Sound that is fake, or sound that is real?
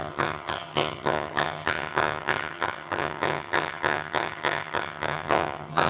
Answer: fake